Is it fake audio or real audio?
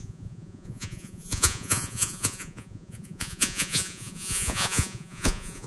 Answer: fake